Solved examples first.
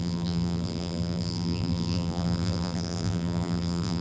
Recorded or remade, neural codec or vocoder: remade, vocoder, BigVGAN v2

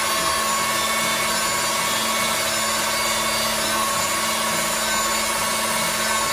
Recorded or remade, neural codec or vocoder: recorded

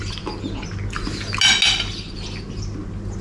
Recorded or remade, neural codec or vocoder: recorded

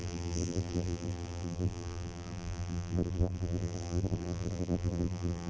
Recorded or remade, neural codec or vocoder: remade, vocoder, BigVGAN v2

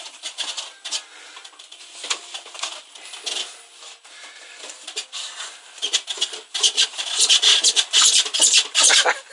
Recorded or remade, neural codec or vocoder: recorded